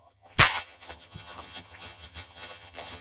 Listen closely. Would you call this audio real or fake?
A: fake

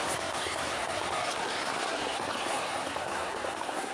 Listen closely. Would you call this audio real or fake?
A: fake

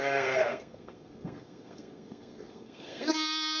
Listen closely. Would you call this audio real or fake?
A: fake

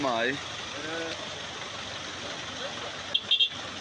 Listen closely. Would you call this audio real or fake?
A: real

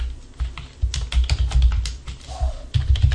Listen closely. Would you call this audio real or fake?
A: real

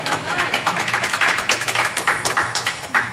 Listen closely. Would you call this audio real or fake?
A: fake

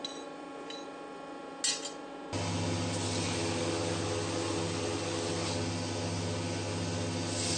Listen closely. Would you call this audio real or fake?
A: real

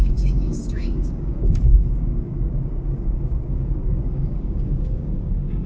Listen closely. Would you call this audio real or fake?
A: fake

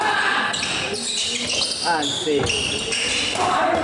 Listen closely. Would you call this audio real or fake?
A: real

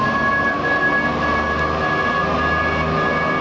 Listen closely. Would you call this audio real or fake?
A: real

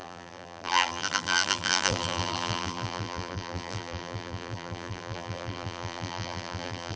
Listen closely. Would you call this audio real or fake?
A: fake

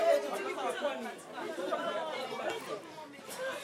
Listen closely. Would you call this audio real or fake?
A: fake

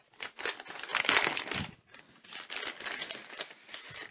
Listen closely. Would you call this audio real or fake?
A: real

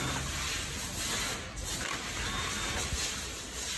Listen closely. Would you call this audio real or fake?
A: real